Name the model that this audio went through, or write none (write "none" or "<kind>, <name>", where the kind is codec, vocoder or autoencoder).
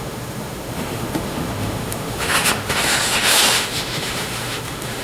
autoencoder, DAC-VAE